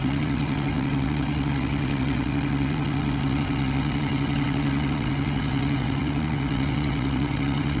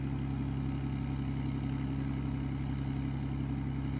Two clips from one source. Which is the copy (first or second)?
first